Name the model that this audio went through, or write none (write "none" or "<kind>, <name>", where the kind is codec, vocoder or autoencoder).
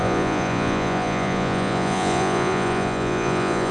vocoder, Vocos